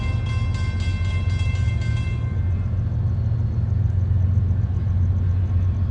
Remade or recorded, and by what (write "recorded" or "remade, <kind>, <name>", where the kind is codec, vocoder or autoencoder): recorded